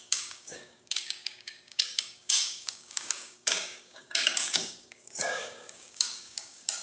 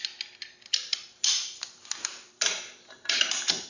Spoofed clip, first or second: first